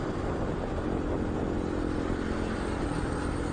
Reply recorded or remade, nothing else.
recorded